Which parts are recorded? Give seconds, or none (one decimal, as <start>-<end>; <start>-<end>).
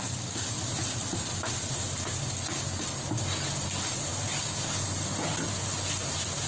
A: 0.0-6.5